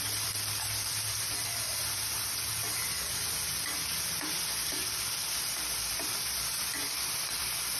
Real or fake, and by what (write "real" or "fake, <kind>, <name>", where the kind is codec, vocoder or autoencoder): fake, vocoder, BigVGAN v2